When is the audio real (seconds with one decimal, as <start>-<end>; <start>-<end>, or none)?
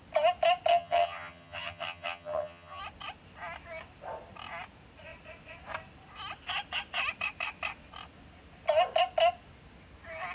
0.0-0.7; 2.8-10.3